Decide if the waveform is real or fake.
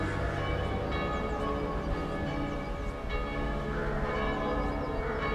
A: real